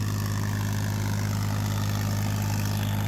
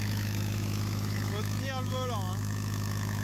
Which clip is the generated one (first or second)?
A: second